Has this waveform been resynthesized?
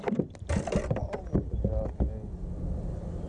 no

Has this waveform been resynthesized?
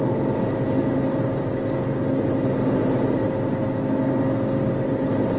no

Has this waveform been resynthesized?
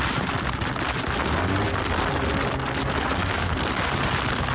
no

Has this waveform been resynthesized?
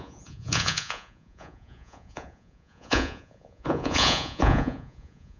yes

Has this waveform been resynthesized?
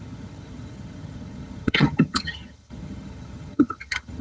yes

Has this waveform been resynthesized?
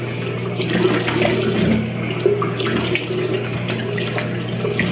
no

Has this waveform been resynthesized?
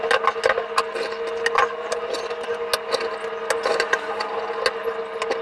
no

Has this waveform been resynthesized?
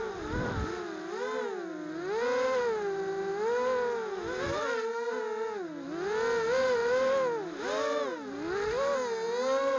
no